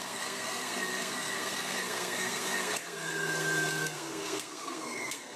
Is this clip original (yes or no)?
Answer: no